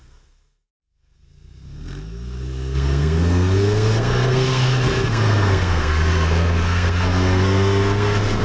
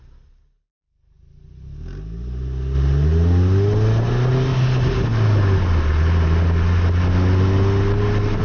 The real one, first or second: second